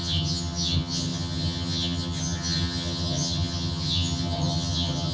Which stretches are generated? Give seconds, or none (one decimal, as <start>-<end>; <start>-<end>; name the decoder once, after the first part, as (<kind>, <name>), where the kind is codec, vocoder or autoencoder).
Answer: 0.0-5.1 (vocoder, HiFi-GAN)